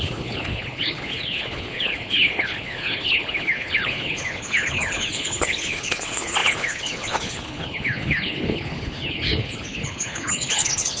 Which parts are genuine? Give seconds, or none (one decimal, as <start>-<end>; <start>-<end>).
none